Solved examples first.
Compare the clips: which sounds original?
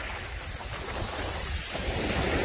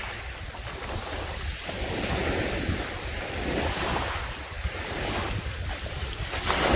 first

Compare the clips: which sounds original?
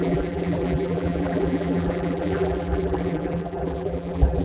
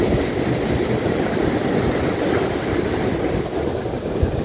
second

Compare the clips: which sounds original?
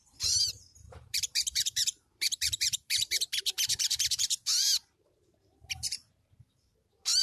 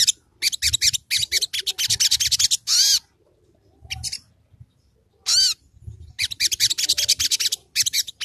second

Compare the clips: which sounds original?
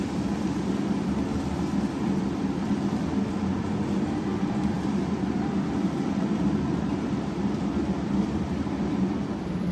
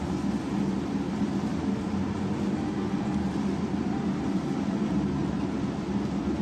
second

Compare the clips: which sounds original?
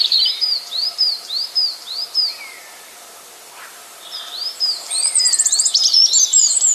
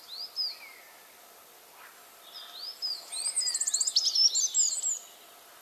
second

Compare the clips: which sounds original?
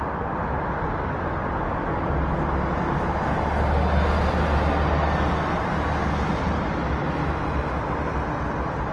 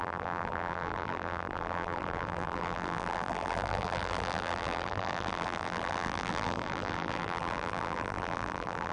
first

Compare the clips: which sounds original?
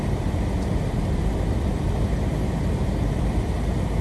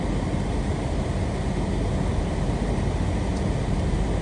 second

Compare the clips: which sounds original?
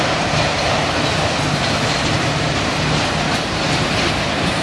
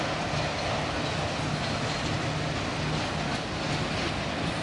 second